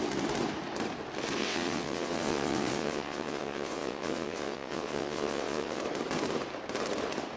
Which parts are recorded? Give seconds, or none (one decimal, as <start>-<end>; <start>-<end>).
0.0-1.4; 5.8-7.4